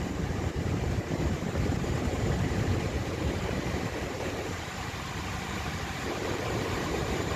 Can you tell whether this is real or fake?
fake